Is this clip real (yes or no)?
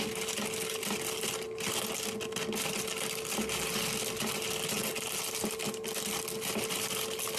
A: yes